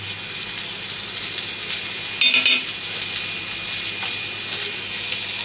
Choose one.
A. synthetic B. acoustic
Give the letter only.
B